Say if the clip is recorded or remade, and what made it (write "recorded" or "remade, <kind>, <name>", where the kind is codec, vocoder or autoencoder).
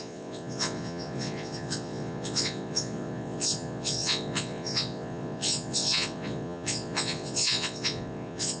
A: remade, vocoder, Vocos